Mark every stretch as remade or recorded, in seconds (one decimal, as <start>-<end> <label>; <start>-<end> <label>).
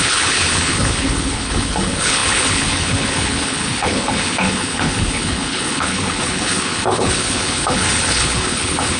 0.0-9.0 remade